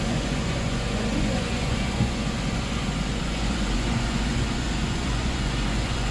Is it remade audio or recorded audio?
remade